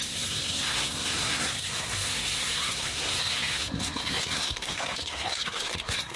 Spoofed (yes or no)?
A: yes